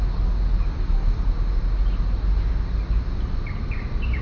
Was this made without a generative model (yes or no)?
yes